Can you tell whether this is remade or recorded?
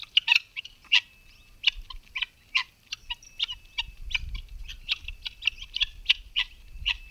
recorded